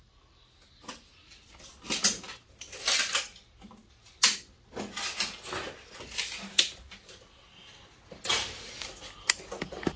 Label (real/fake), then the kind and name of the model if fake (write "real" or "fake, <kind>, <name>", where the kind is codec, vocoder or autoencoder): real